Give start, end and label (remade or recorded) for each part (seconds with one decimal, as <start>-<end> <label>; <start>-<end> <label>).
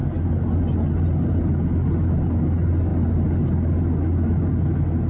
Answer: 0.0-5.1 recorded